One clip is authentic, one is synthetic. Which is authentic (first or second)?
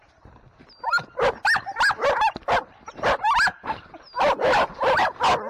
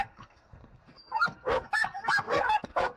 first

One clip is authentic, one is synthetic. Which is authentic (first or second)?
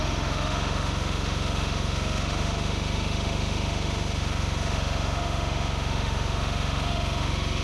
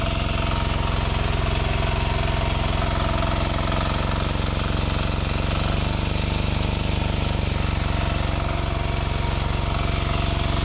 second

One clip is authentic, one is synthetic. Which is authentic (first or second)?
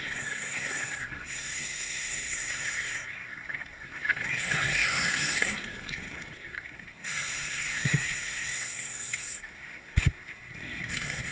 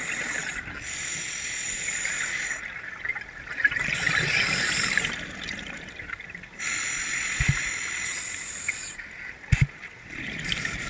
second